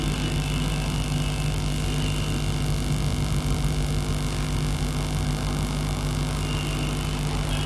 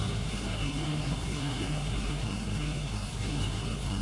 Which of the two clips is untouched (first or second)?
first